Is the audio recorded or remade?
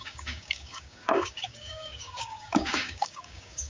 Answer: remade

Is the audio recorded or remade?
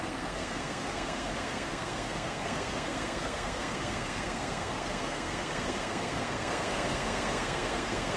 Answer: remade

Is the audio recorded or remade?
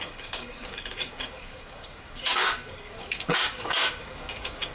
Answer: remade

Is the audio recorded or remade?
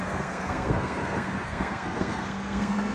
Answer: remade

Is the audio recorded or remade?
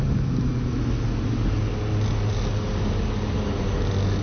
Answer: recorded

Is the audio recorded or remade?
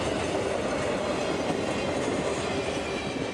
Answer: recorded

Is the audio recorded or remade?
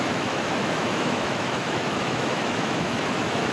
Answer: remade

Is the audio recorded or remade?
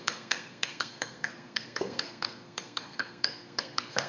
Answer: remade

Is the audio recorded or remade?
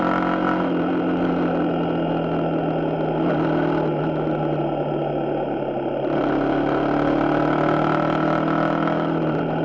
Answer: recorded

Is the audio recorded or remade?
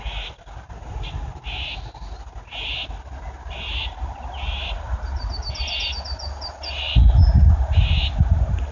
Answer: recorded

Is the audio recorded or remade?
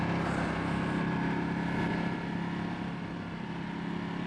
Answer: recorded